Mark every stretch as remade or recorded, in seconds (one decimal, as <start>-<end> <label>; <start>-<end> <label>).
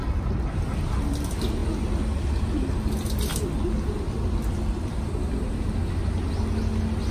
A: 0.0-7.1 recorded